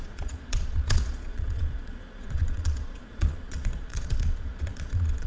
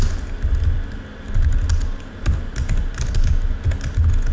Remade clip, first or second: first